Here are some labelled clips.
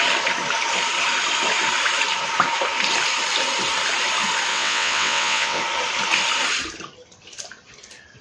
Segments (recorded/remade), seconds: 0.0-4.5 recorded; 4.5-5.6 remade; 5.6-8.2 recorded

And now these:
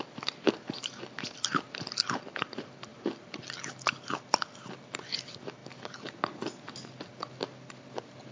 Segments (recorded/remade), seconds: 0.0-8.3 recorded